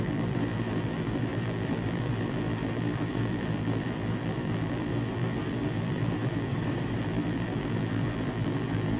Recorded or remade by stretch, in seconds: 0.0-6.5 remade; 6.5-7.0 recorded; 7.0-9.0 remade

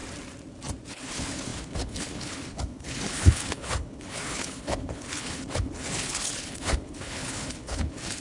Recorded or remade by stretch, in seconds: 0.0-0.9 recorded; 0.9-8.2 remade

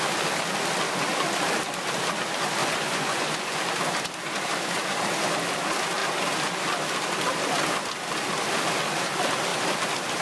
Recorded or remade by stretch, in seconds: 0.0-2.6 recorded; 2.6-3.6 remade; 3.6-10.2 recorded